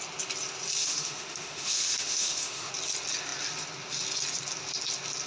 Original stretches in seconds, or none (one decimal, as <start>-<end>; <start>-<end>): 0.0-0.8; 2.7-5.3